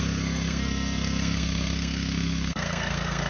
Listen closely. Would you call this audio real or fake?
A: fake